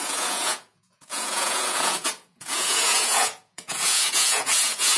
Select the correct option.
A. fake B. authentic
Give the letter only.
A